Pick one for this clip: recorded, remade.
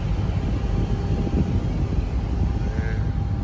recorded